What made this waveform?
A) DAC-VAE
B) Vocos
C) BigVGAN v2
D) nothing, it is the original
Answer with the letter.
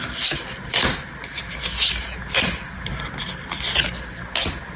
D